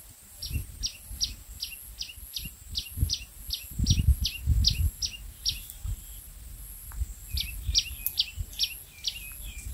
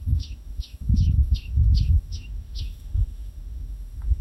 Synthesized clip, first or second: second